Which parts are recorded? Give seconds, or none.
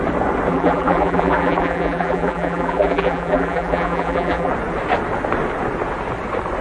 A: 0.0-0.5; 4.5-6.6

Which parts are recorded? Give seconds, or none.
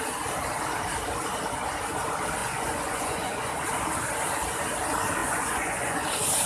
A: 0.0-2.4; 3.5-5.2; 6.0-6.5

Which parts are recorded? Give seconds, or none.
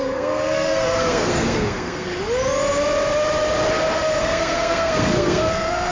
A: 2.1-4.2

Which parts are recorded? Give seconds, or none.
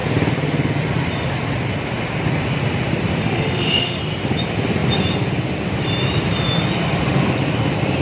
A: 0.0-3.2; 4.0-8.0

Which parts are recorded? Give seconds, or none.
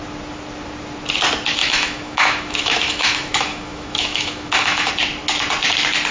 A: 0.0-1.6; 4.9-6.1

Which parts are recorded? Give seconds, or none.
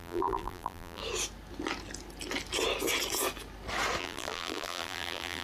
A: 1.0-4.0